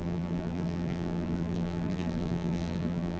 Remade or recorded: remade